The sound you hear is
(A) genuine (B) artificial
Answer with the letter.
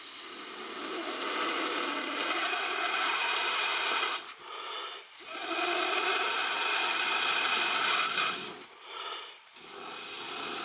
A